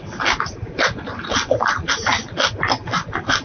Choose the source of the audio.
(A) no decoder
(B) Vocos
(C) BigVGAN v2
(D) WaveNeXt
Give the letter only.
A